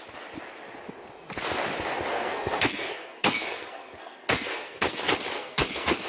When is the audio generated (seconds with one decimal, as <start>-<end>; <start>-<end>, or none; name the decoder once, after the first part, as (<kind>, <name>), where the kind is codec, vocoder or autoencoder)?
2.1-6.1 (codec, SNAC)